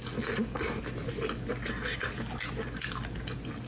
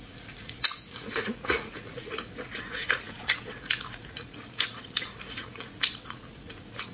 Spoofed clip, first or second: second